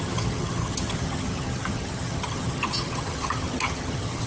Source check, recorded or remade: remade